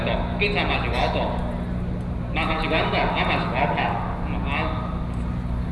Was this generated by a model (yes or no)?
no